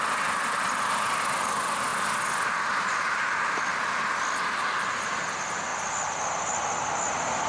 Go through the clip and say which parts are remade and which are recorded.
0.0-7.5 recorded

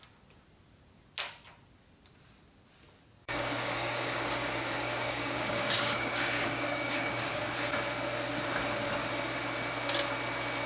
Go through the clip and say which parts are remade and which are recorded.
0.0-3.2 recorded; 3.2-7.4 remade; 7.4-10.7 recorded